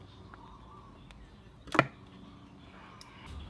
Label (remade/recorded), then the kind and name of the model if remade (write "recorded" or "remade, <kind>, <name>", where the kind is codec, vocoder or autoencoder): recorded